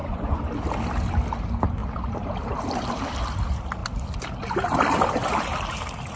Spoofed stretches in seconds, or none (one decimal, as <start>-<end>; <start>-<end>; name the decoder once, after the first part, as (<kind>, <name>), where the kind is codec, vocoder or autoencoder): 0.0-0.5 (vocoder, Vocos)